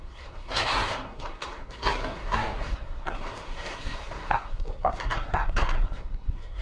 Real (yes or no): no